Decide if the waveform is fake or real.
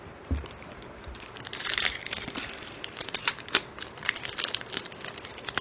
fake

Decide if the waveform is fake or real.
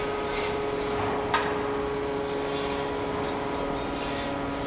real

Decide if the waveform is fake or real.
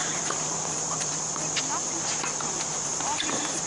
fake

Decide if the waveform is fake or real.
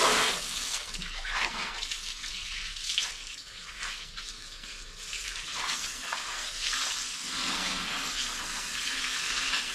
fake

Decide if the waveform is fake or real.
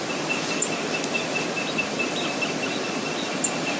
real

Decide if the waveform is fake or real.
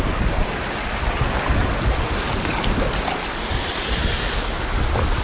real